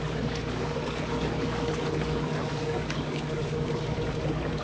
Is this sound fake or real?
fake